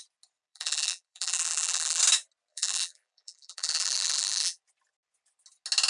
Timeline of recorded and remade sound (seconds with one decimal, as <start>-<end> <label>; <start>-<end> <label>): 0.0-0.5 recorded; 0.5-2.0 remade; 2.0-2.5 recorded; 2.5-4.6 remade; 4.6-5.9 recorded